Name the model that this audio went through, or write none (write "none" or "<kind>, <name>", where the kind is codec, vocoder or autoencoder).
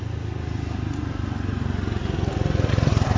none